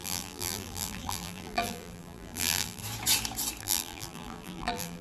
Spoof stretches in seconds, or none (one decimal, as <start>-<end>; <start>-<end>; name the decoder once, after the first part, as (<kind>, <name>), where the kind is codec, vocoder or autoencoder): 0.0-2.8 (vocoder, BigVGAN v2); 3.6-5.0